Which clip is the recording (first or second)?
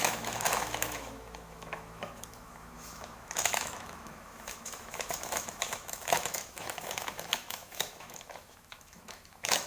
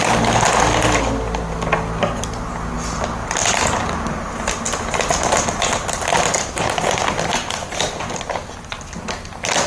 second